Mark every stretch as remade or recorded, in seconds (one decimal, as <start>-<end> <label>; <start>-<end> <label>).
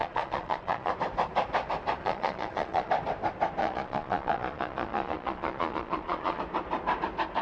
0.0-0.9 remade; 0.9-2.0 recorded; 2.0-2.9 remade; 2.9-3.6 recorded; 3.6-6.4 remade; 6.4-7.4 recorded